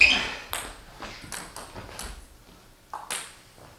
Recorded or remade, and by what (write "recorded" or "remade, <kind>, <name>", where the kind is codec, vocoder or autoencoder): recorded